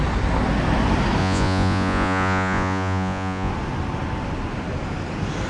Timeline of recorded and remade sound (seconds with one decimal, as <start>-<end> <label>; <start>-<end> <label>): 0.0-1.2 recorded; 1.2-3.5 remade; 3.5-5.5 recorded